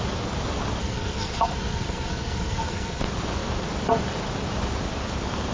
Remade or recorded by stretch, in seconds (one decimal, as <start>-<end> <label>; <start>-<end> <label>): 0.0-0.8 recorded; 0.8-3.0 remade; 3.0-5.5 recorded